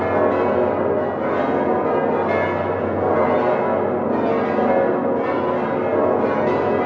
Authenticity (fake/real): real